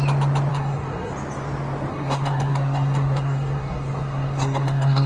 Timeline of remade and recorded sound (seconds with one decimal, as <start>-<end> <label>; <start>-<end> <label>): 0.0-0.5 recorded; 0.5-1.1 remade; 1.1-1.9 recorded; 1.9-5.1 remade

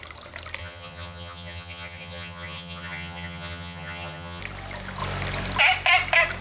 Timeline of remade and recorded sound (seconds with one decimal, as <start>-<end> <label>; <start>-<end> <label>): 0.0-0.6 recorded; 0.6-4.4 remade; 4.4-6.4 recorded

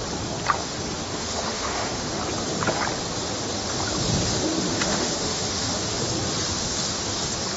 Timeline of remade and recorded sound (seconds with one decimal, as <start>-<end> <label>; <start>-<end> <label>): 0.0-1.1 recorded; 1.1-2.2 remade; 2.2-4.7 recorded; 4.7-6.0 remade; 6.0-7.6 recorded

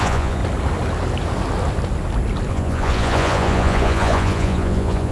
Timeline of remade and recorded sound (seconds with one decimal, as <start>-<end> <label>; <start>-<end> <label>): 0.0-0.4 remade; 0.4-2.5 recorded; 2.5-5.1 remade

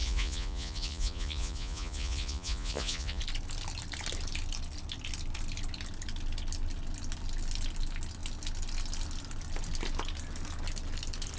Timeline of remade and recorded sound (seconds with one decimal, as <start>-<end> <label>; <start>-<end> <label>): 0.0-3.2 remade; 3.2-11.4 recorded

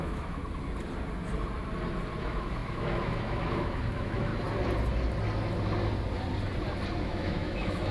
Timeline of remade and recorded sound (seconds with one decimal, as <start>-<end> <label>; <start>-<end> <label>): 0.0-0.4 remade; 0.4-2.2 recorded; 2.2-4.3 remade; 4.3-7.0 recorded; 7.0-7.9 remade

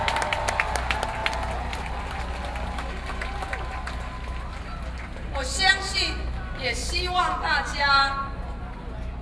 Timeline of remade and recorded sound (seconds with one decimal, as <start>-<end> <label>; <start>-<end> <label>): 0.0-9.2 recorded